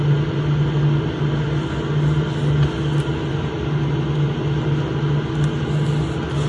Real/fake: real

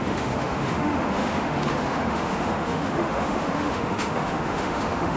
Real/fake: fake